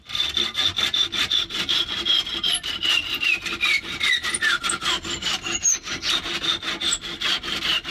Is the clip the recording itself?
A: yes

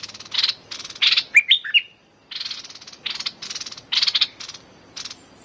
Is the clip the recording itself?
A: yes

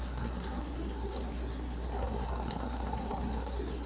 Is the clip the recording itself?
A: no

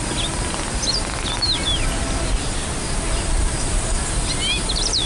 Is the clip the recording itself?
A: yes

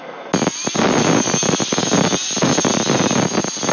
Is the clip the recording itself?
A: yes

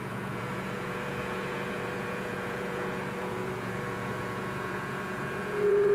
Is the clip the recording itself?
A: no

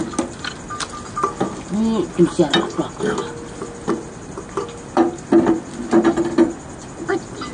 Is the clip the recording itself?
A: yes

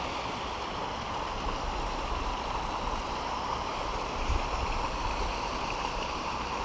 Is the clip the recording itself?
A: yes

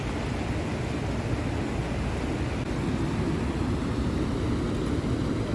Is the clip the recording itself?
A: yes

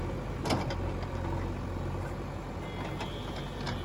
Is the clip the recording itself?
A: yes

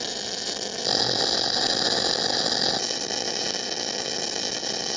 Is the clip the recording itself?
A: yes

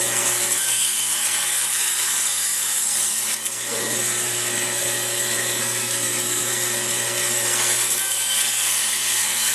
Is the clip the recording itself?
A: no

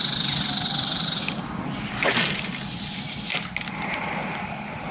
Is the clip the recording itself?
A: yes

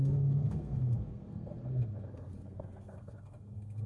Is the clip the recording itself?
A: no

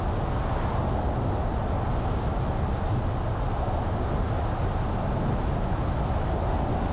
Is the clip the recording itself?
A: yes